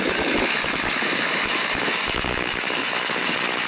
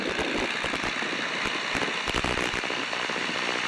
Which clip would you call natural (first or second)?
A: second